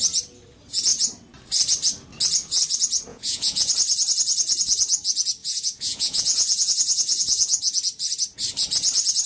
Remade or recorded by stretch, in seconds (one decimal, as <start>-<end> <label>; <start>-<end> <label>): 0.0-3.1 recorded; 3.1-3.7 remade; 3.7-5.4 recorded; 5.4-7.6 remade; 7.6-9.3 recorded